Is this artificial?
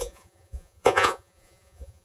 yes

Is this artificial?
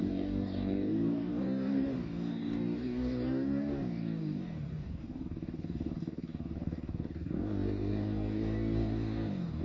yes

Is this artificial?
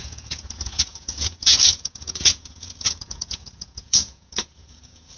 yes